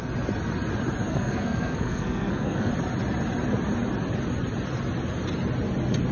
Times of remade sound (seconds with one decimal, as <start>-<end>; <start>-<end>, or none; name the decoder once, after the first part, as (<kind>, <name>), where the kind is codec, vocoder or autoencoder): 1.1-2.7 (codec, SNAC)